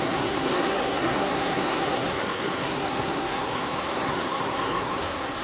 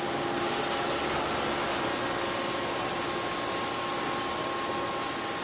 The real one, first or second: second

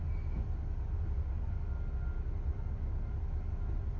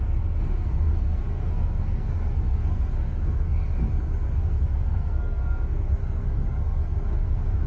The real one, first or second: first